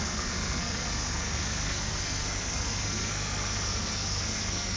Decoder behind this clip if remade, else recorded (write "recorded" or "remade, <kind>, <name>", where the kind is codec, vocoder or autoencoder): remade, codec, SNAC